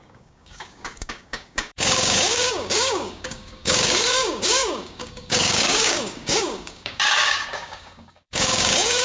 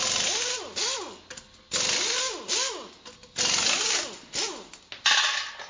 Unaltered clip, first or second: second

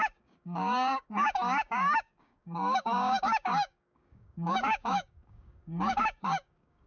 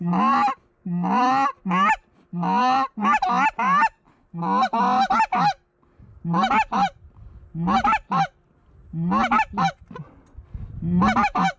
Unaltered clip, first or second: second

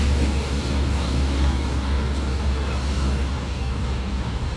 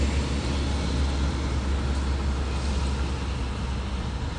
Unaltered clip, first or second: second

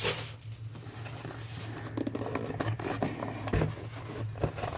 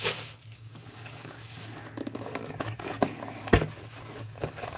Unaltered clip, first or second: first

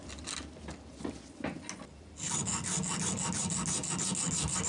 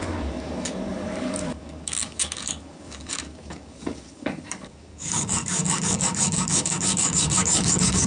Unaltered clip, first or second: first